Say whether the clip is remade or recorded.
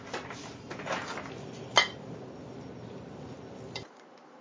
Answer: recorded